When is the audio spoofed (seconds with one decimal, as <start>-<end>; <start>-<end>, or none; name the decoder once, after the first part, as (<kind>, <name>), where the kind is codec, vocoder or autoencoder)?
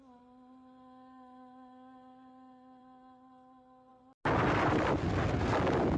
none